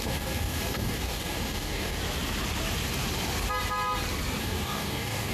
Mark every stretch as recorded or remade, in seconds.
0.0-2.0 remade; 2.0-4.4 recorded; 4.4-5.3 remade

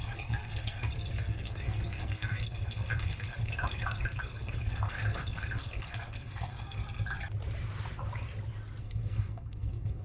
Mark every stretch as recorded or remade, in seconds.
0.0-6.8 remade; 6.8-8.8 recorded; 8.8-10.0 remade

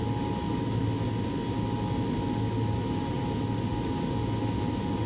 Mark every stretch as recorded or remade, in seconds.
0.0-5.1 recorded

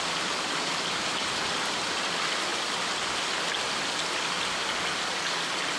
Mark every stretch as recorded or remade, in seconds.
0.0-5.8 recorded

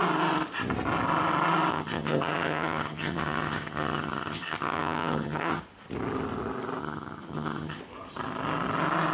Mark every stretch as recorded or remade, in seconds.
0.0-1.7 recorded; 1.7-5.6 remade; 5.6-6.8 recorded; 6.8-7.8 remade; 7.8-9.1 recorded

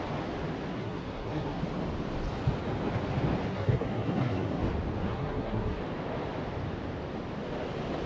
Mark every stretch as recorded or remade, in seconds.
0.0-0.7 recorded; 0.7-1.6 remade; 1.6-3.5 recorded; 3.5-4.6 remade; 4.6-5.0 recorded; 5.0-5.8 remade; 5.8-8.1 recorded